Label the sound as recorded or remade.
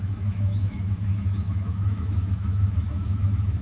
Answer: remade